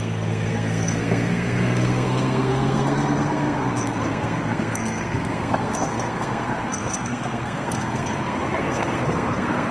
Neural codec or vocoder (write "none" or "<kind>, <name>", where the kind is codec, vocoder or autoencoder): codec, SNAC